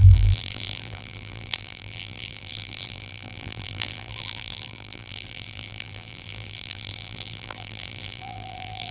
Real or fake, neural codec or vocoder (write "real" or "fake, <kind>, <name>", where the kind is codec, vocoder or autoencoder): fake, vocoder, BigVGAN v2